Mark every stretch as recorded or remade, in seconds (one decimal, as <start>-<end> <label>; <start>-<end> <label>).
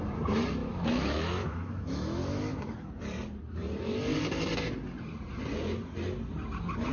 0.0-0.6 recorded; 0.6-2.9 remade; 2.9-6.9 recorded